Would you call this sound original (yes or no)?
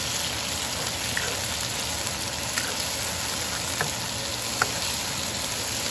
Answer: yes